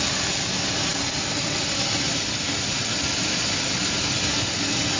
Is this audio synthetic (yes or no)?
no